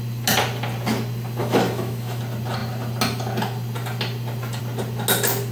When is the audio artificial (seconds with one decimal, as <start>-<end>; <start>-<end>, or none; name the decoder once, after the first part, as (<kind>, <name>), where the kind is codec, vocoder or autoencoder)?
1.4-2.2 (autoencoder, DAC-VAE)